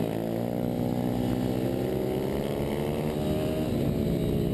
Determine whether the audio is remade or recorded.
recorded